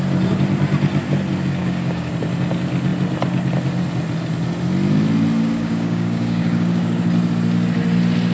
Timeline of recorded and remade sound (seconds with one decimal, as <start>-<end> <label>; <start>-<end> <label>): 0.0-1.6 recorded; 1.6-2.1 remade; 2.1-5.4 recorded; 5.4-7.0 remade; 7.0-8.3 recorded